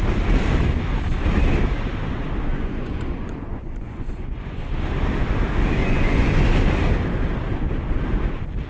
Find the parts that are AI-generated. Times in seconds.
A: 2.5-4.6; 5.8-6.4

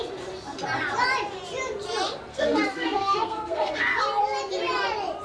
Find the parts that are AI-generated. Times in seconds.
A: 2.3-3.8

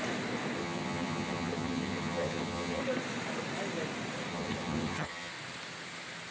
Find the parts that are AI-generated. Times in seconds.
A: 0.6-2.8; 4.3-5.3

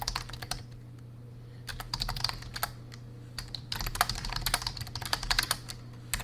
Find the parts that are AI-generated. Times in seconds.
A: none

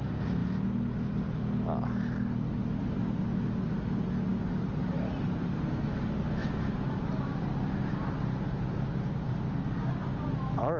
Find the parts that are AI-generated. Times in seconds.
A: 6.4-7.0

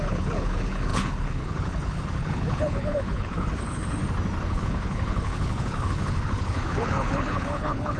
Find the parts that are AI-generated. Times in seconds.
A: 0.0-4.0; 4.5-8.0

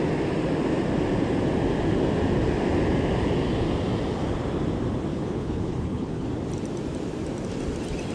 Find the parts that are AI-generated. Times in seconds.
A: 5.1-6.3

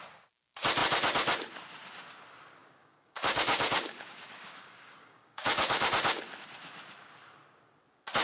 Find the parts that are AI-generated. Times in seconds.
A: 2.6-5.9